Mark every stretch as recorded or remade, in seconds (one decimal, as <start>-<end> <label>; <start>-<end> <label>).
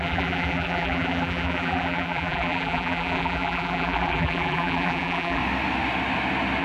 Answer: 0.0-5.4 remade; 5.4-6.6 recorded